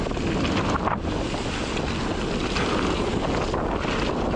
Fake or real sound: real